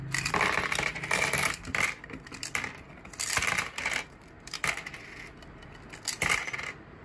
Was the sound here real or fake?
real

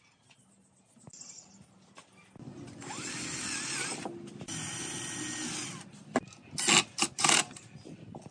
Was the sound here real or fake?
real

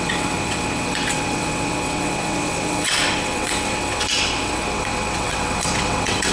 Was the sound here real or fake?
fake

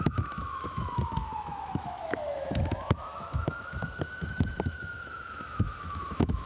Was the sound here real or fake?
fake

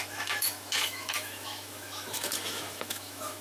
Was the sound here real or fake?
fake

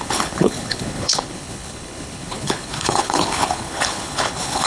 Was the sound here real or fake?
fake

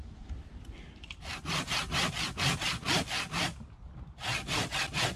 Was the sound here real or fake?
real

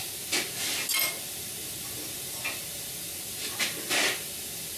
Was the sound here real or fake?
real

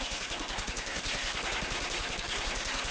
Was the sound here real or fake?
fake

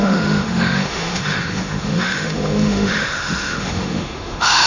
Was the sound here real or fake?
fake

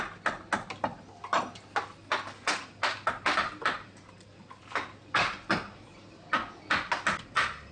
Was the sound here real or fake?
real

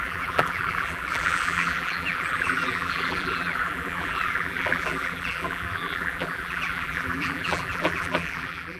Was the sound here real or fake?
fake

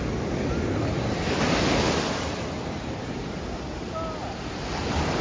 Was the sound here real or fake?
real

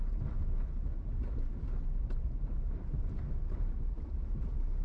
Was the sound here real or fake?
real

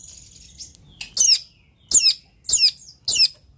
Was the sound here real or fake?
real